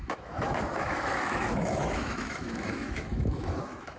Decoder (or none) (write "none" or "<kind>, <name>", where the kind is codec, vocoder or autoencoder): autoencoder, DAC-VAE